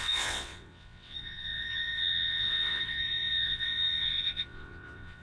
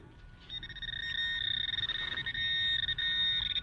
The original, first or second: second